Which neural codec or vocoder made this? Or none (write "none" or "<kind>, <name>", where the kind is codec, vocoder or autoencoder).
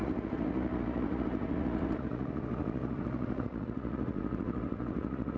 vocoder, Vocos